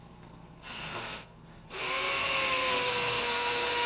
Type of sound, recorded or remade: remade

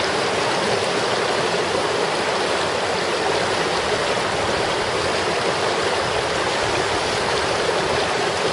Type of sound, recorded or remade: remade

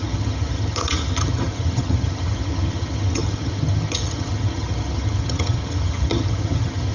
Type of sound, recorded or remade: remade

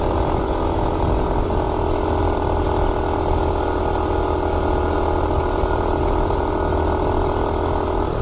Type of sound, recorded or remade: recorded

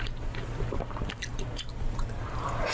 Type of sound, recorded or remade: recorded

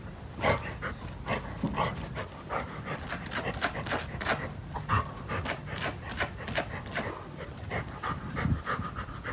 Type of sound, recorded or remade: recorded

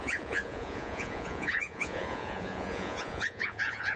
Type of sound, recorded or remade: remade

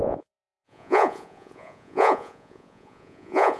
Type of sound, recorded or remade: remade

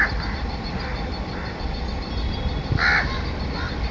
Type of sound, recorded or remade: recorded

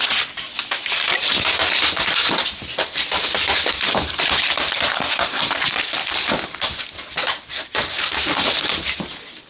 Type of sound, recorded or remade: remade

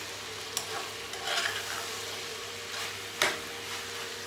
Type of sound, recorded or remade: recorded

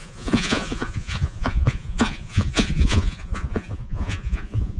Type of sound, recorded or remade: remade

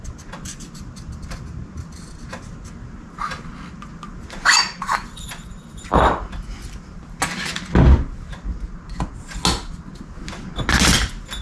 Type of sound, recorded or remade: recorded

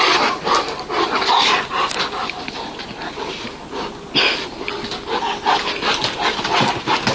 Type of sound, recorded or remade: recorded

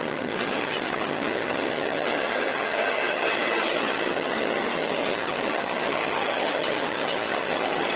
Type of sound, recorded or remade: remade